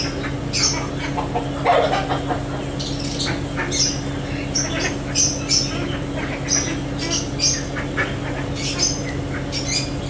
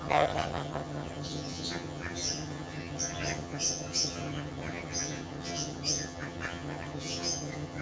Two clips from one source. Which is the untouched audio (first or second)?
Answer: first